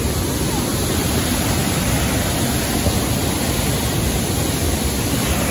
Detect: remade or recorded recorded